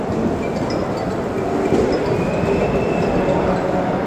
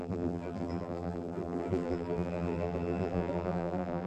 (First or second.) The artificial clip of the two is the second